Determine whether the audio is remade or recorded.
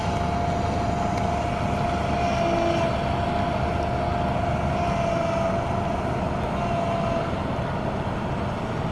recorded